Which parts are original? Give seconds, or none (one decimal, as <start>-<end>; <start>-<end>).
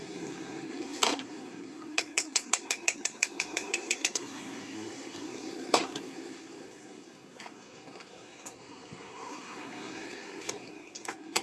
none